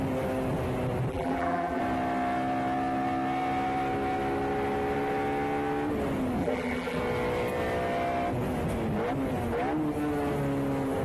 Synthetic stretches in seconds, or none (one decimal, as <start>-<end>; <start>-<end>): 1.1-1.8; 6.4-7.0

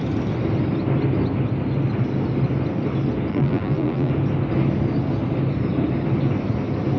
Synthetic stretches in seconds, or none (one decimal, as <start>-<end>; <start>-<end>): 3.3-4.1

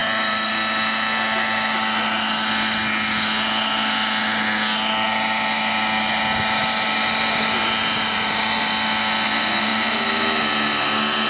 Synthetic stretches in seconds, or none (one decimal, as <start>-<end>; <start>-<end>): 0.0-0.5; 6.6-8.6

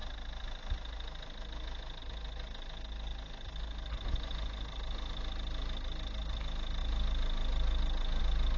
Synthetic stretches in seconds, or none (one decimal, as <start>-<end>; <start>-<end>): none

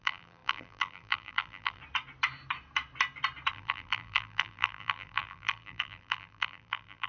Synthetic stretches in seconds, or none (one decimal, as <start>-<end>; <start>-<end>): 0.0-1.8; 3.5-7.1

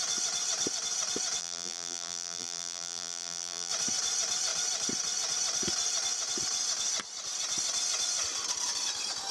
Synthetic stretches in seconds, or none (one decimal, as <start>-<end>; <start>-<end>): 1.4-3.7

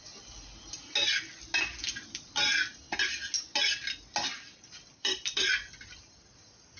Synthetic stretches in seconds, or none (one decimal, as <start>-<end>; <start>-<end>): 1.8-2.6; 4.5-6.2

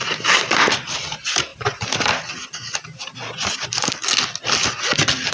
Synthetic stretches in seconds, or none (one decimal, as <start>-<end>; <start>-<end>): none